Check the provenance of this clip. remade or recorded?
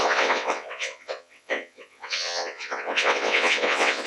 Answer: remade